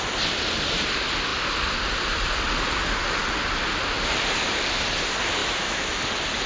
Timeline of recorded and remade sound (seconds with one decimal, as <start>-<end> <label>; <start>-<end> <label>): 0.0-5.4 recorded; 5.4-5.9 remade; 5.9-6.5 recorded

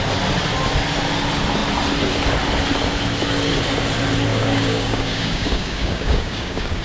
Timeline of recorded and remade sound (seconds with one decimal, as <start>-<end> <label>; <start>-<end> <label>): 0.0-4.3 recorded; 4.3-6.8 remade

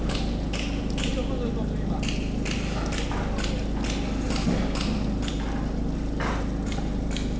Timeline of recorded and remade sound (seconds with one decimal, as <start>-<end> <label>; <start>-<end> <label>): 0.0-7.4 recorded

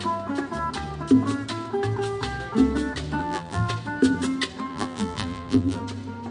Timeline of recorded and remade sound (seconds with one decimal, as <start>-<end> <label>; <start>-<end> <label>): 0.0-3.2 recorded; 3.2-3.7 remade; 3.7-4.7 recorded; 4.7-5.8 remade; 5.8-6.3 recorded